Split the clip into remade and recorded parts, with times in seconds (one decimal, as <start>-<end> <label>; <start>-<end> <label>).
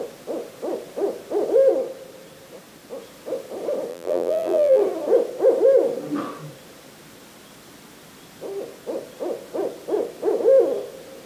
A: 0.0-3.9 recorded; 3.9-4.8 remade; 4.8-11.3 recorded